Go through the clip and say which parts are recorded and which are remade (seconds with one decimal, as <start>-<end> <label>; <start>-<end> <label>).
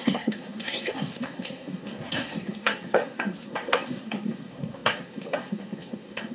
0.0-6.3 remade